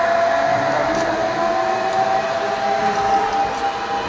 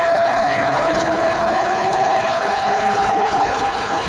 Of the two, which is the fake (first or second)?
second